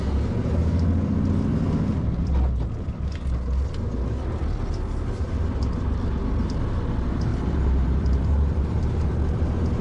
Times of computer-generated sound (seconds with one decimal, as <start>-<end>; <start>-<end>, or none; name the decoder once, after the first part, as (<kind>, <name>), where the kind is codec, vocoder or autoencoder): 7.3-9.1 (vocoder, BigVGAN v2)